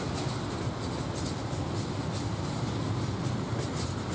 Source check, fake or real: real